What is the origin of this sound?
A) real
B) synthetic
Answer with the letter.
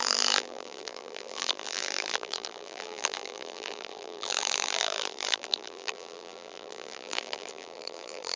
B